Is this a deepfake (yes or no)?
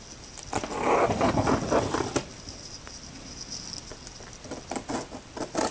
no